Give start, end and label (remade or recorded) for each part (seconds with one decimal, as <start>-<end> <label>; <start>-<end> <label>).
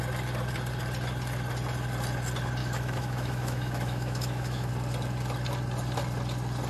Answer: 0.0-2.6 recorded; 2.6-4.7 remade; 4.7-6.7 recorded